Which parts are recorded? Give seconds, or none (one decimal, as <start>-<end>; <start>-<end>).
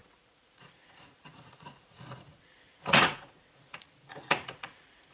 none